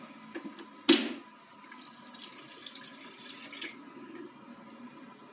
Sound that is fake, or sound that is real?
real